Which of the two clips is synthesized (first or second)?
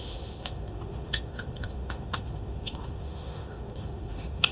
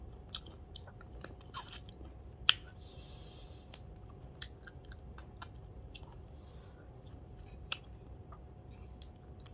first